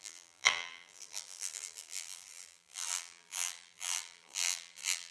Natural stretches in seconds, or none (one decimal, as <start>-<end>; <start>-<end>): none